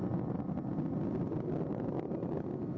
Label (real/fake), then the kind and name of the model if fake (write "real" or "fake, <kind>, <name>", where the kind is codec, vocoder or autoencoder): real